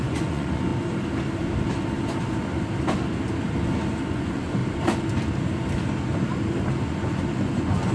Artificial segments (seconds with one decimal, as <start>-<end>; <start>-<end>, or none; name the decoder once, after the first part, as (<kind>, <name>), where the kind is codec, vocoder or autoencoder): 0.0-0.7 (vocoder, Vocos); 4.1-4.6; 6.8-7.9